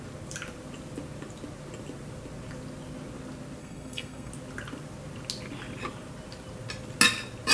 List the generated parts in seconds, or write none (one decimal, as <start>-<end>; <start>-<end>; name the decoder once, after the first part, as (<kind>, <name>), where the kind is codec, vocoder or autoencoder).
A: 3.6-4.3 (codec, SNAC)